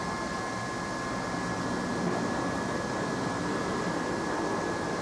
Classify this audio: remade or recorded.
recorded